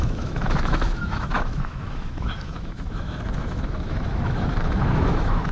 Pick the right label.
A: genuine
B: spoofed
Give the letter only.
B